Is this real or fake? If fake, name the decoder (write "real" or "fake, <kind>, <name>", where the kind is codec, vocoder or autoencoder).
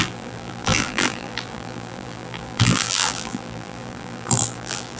fake, vocoder, BigVGAN v2